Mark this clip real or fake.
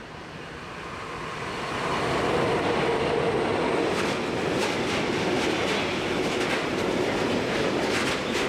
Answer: real